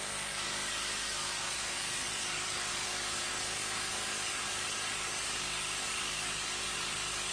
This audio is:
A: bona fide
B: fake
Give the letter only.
B